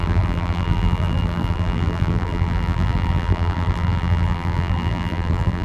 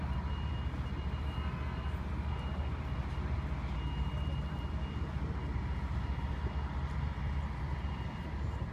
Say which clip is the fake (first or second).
first